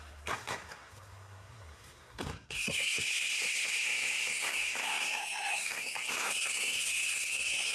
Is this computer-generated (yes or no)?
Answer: yes